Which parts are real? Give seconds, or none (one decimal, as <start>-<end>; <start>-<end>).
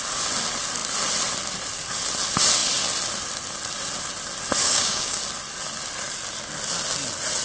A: 0.0-4.6; 5.2-7.4